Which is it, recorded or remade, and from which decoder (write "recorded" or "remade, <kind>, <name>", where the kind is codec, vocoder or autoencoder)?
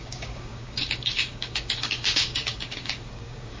remade, codec, DAC